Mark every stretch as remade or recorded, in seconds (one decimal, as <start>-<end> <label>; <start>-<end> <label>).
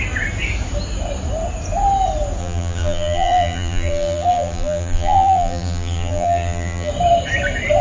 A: 0.0-2.4 recorded; 2.4-6.9 remade; 6.9-7.8 recorded